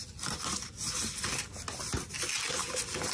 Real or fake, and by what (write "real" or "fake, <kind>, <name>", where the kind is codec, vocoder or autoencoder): real